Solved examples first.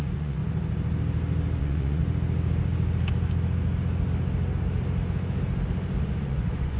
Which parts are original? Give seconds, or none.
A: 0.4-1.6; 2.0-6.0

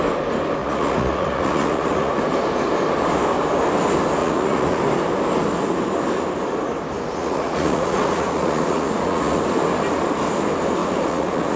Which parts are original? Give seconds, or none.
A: 0.0-0.6; 2.1-4.2; 4.8-7.1; 9.4-10.8

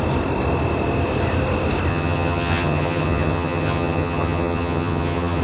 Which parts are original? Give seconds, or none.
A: 0.0-1.9

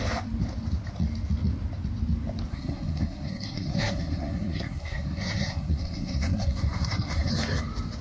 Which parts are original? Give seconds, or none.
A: 0.0-2.5; 7.3-8.0